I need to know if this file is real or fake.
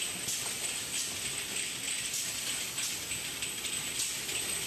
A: real